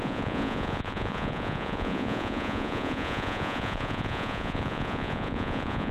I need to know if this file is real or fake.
fake